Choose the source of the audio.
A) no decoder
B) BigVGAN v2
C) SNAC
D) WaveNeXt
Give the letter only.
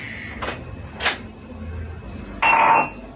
A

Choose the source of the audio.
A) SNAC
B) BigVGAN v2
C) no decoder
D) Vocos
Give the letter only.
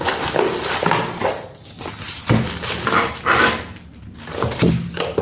C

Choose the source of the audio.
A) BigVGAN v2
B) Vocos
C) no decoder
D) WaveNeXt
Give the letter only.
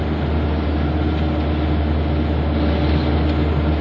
C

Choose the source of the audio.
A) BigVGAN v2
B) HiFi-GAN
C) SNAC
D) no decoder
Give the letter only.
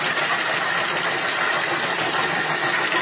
D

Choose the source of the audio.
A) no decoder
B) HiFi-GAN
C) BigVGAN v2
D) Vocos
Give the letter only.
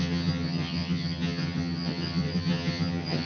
B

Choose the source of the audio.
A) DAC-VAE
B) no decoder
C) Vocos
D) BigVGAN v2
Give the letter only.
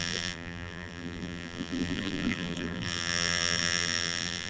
D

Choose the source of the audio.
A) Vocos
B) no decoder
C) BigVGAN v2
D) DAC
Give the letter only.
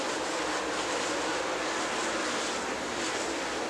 B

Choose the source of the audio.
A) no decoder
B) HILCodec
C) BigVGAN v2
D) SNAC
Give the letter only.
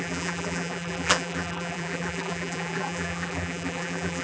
C